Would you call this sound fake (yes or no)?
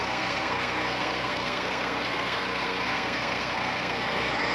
yes